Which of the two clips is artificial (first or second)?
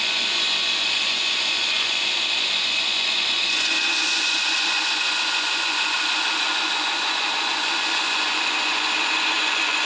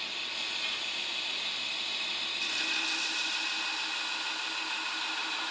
first